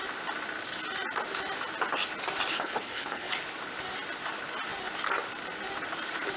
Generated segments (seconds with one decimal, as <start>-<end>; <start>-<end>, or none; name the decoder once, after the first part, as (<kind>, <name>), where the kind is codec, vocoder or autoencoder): 2.5-3.3 (codec, HILCodec)